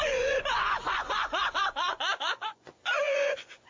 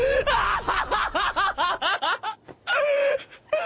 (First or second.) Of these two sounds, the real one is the second